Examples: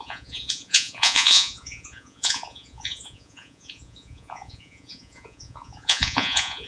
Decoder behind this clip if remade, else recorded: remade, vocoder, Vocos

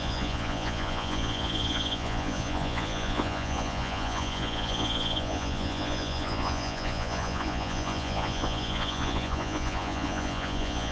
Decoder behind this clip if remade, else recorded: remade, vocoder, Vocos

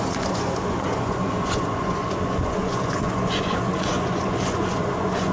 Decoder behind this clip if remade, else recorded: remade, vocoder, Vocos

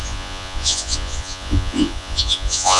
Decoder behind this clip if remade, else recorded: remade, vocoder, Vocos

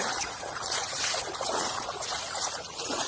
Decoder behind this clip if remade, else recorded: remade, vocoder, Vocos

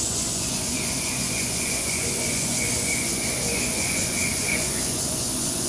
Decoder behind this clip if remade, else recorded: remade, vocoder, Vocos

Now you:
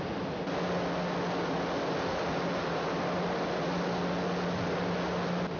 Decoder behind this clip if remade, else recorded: recorded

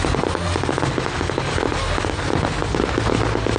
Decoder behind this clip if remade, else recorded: recorded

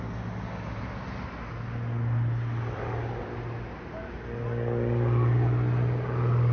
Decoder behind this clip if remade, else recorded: recorded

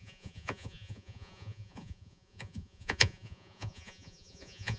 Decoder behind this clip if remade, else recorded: remade, vocoder, Vocos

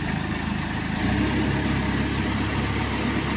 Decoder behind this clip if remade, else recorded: recorded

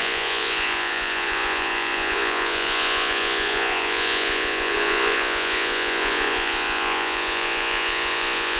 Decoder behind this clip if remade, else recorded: remade, vocoder, Vocos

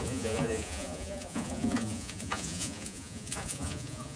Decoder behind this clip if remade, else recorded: remade, vocoder, Vocos